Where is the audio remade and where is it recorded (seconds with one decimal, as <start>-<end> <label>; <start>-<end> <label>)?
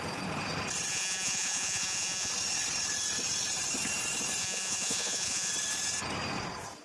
0.0-0.9 recorded; 0.9-2.3 remade; 2.3-4.4 recorded; 4.4-5.5 remade; 5.5-6.8 recorded